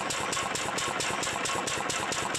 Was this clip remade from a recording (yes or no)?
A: no